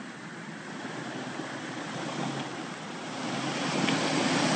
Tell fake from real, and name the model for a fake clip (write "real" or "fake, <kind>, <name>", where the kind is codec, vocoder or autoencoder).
real